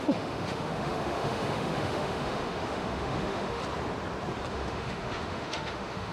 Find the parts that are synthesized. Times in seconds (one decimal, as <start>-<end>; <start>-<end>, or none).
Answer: 0.0-3.6; 4.5-6.1